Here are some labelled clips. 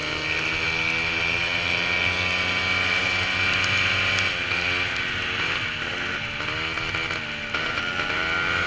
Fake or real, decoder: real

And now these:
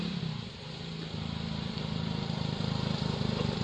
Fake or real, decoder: fake, vocoder, BigVGAN v2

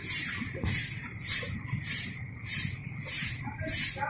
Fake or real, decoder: fake, vocoder, BigVGAN v2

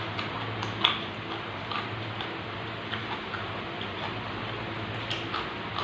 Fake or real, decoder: real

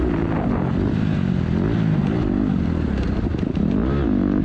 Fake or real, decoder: real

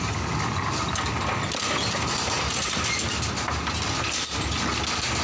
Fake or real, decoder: real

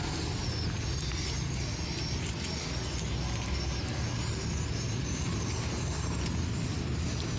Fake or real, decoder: real